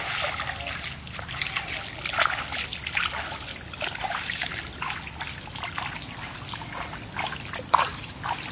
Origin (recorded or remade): recorded